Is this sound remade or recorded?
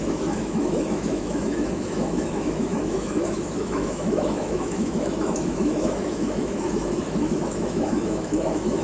remade